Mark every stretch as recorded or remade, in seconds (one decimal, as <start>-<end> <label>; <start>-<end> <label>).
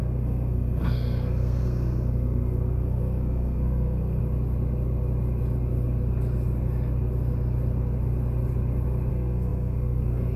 0.0-4.2 remade; 4.2-9.1 recorded; 9.1-10.4 remade